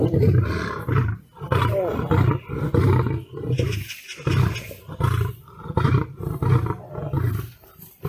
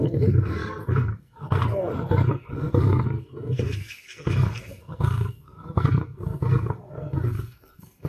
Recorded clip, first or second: first